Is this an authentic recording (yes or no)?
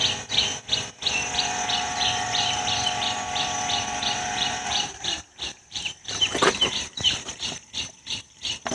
no